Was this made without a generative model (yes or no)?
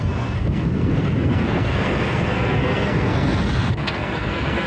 no